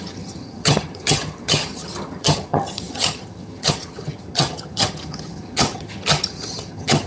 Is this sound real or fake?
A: fake